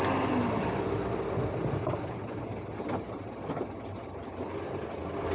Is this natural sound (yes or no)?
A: yes